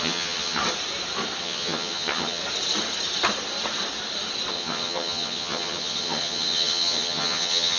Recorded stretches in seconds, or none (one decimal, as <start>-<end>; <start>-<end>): 0.6-1.4; 2.4-4.5